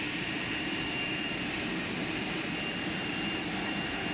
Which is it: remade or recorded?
remade